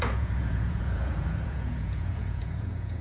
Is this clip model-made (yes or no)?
yes